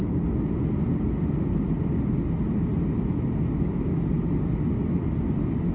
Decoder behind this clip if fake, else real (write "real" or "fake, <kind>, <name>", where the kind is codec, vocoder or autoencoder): real